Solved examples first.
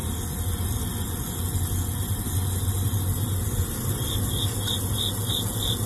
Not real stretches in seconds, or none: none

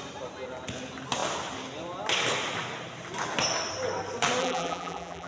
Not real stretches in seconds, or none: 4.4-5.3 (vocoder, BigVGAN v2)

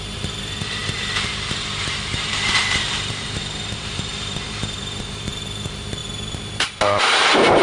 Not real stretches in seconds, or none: 0.0-7.6 (vocoder, BigVGAN v2)

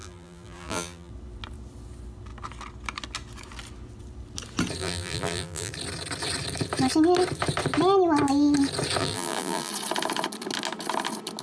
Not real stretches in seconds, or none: 0.0-1.1 (vocoder, BigVGAN v2); 4.8-5.7; 9.0-9.7

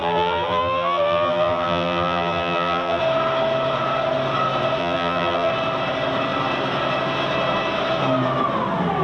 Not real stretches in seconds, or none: 0.0-3.0 (vocoder, BigVGAN v2); 4.8-5.5

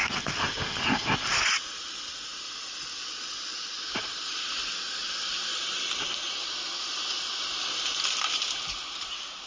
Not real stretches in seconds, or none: 5.0-5.9 (vocoder, BigVGAN v2)

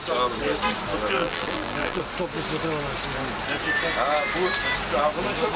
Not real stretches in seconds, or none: 1.1-2.0 (vocoder, BigVGAN v2)